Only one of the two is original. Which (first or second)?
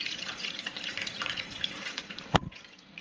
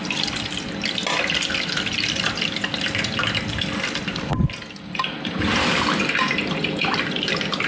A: second